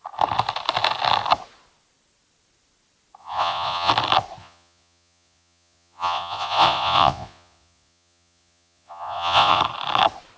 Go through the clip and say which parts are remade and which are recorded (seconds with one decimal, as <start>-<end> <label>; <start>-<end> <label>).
0.0-3.2 recorded; 3.2-3.9 remade; 3.9-4.4 recorded; 4.4-9.6 remade; 9.6-10.4 recorded

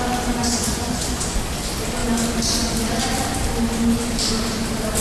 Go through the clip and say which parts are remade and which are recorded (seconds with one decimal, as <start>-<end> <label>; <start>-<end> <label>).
0.0-0.4 recorded; 0.4-1.4 remade; 1.4-5.0 recorded